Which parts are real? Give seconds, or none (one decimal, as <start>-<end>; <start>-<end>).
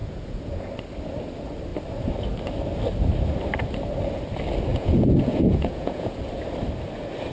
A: 0.7-4.7; 6.2-7.3